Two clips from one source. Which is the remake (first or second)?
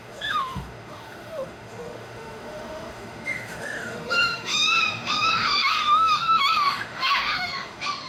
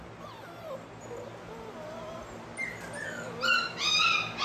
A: first